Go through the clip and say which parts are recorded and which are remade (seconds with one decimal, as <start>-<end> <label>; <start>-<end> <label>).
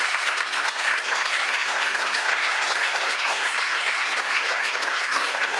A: 0.0-5.6 remade